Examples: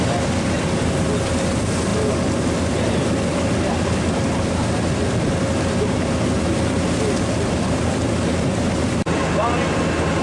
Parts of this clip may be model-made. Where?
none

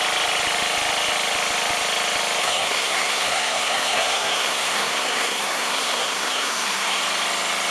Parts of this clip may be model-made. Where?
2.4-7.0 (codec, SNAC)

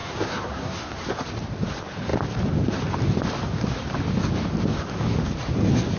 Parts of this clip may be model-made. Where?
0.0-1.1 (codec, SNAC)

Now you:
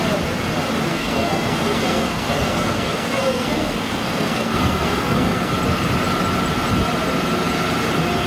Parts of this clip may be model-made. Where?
0.9-5.5 (codec, SNAC)